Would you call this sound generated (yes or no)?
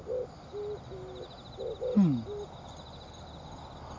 no